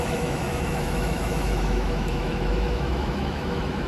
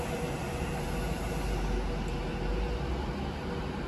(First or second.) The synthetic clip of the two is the first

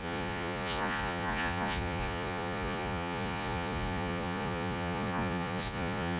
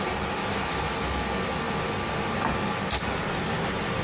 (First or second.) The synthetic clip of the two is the first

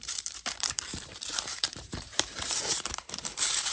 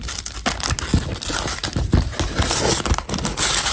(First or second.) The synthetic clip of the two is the first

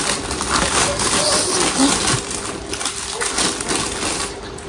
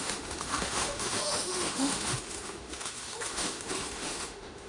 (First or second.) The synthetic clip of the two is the second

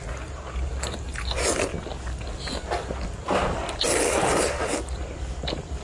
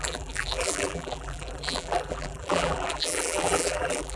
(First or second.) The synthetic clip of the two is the second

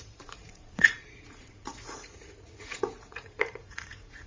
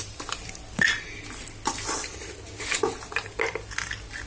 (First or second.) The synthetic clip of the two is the first